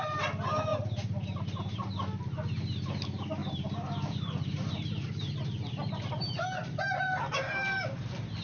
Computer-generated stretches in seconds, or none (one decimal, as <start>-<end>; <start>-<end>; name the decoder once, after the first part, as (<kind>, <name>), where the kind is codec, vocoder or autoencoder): 0.7-1.9 (vocoder, BigVGAN v2); 3.4-6.8